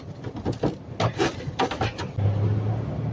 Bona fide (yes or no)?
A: yes